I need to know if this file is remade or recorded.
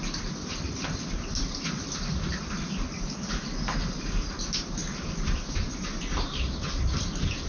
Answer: recorded